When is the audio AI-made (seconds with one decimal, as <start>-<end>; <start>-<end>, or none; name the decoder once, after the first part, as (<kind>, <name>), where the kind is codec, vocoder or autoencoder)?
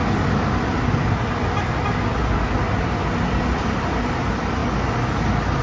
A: none